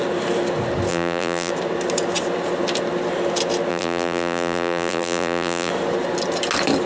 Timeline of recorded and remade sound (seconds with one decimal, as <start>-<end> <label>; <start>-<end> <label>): 0.0-0.9 recorded; 0.9-1.5 remade; 1.5-3.7 recorded; 3.7-5.7 remade; 5.7-6.9 recorded

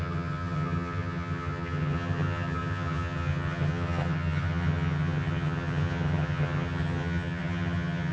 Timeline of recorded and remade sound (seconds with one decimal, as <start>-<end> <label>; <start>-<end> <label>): 0.0-8.1 remade